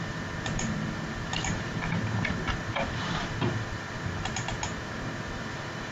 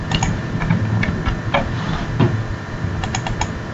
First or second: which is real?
second